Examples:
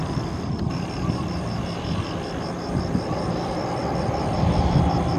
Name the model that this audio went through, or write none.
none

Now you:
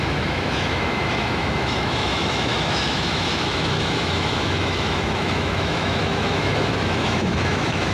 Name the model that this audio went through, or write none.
autoencoder, DAC-VAE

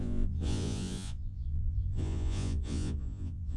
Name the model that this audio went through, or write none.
vocoder, Vocos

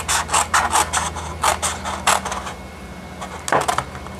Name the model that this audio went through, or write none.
none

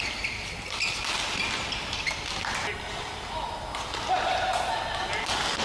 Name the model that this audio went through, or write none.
none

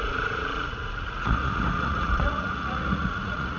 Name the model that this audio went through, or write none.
vocoder, Vocos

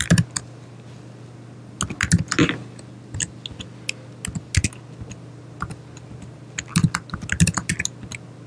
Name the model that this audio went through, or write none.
none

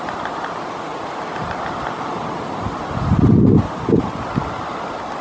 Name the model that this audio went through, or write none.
none